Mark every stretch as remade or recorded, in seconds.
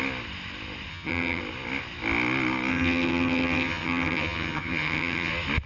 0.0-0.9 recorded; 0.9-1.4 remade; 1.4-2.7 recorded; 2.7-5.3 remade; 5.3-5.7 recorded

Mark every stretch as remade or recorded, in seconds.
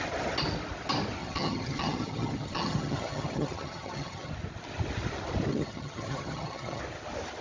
0.0-1.2 recorded; 1.2-4.3 remade; 4.3-5.5 recorded; 5.5-6.8 remade; 6.8-7.4 recorded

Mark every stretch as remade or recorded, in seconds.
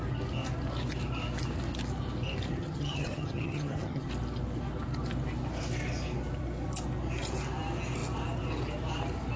0.0-2.5 recorded; 2.5-4.1 remade; 4.1-9.4 recorded